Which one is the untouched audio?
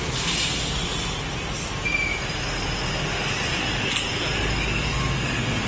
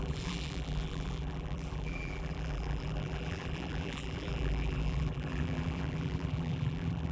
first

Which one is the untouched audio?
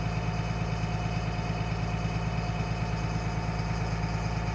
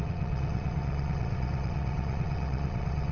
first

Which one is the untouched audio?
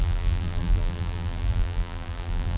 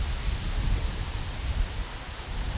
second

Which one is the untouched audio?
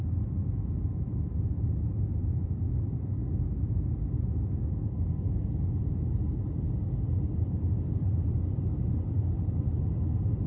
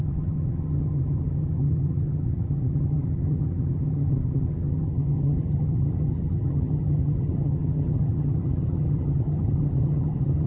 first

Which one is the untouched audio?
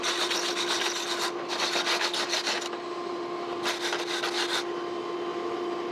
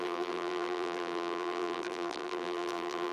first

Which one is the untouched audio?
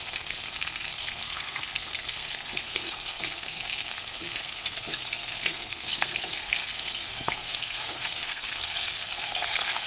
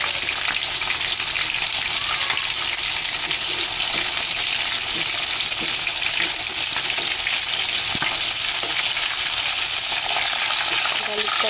second